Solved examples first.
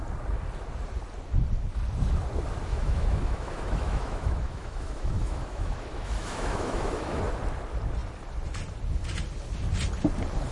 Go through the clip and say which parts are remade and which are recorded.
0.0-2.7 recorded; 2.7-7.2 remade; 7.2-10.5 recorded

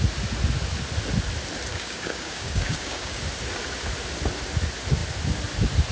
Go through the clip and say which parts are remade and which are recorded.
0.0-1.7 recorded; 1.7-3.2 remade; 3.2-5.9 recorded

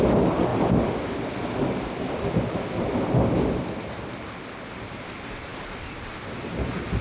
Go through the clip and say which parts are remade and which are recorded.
0.0-0.5 remade; 0.5-4.7 recorded; 4.7-7.0 remade

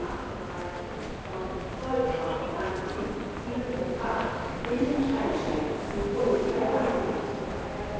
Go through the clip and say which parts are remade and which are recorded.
0.0-8.0 recorded

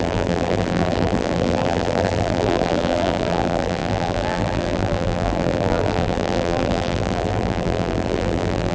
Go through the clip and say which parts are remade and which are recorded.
0.0-8.7 remade

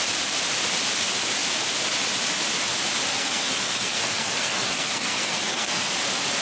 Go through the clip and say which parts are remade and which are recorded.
0.0-3.1 recorded; 3.1-5.9 remade; 5.9-6.4 recorded

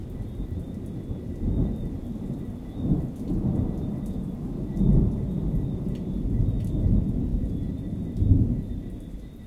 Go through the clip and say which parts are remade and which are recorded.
0.0-9.5 recorded